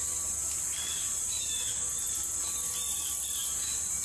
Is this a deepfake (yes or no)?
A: no